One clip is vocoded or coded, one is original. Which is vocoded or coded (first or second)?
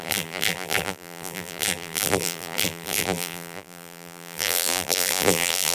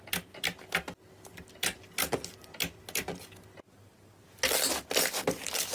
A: first